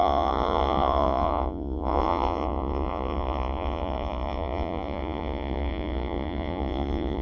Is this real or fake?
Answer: fake